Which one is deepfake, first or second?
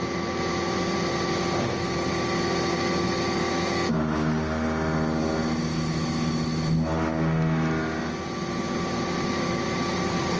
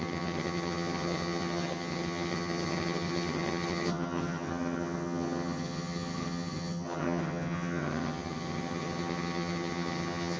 second